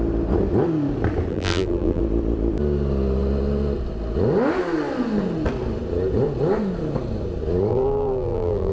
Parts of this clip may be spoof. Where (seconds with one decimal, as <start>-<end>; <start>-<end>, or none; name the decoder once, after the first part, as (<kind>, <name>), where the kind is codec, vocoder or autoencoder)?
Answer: 1.3-2.0 (vocoder, BigVGAN v2); 7.7-8.7